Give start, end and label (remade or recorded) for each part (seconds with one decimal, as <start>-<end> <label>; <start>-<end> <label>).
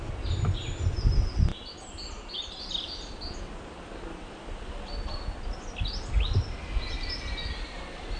0.0-1.5 recorded; 1.5-2.6 remade; 2.6-8.2 recorded